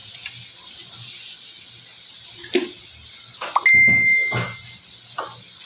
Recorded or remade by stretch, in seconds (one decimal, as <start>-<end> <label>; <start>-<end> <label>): 0.0-5.7 recorded